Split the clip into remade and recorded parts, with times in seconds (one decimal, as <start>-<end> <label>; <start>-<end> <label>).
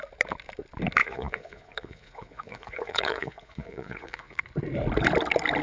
0.0-1.0 recorded; 1.0-4.4 remade; 4.4-5.6 recorded